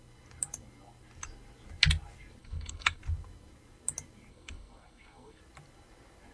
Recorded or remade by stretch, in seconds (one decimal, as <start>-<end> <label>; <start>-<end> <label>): 0.0-2.4 recorded; 2.4-3.0 remade; 3.0-4.3 recorded; 4.3-5.4 remade; 5.4-6.3 recorded